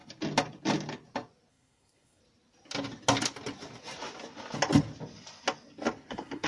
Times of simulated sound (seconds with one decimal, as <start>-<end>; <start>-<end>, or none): 1.5-2.2; 6.1-6.5